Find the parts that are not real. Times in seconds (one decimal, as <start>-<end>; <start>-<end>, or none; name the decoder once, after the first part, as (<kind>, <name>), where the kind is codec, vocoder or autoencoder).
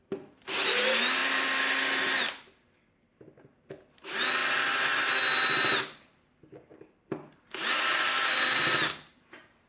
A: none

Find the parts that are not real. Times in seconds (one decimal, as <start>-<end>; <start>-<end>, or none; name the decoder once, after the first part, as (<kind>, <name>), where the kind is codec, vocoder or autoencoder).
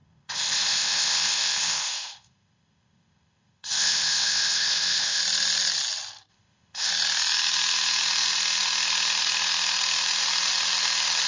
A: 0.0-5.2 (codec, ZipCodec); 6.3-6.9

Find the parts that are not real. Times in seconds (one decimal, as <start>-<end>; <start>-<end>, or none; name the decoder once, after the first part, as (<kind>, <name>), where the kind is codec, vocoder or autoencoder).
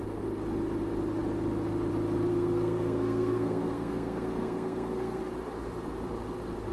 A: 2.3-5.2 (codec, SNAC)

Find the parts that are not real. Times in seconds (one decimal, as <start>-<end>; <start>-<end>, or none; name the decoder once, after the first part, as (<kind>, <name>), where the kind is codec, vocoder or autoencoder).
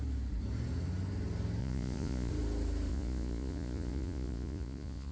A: 1.6-2.3 (vocoder, Vocos); 2.9-5.1